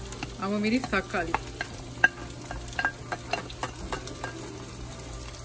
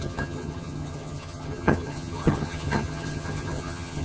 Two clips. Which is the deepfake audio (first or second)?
second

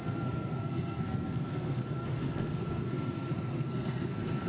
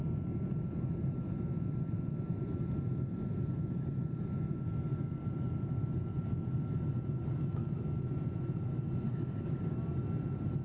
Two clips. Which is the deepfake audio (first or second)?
first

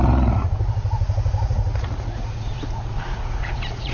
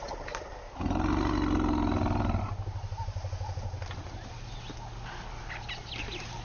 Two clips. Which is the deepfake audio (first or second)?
first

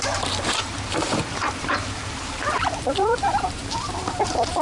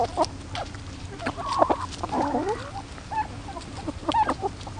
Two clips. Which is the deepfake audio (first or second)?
first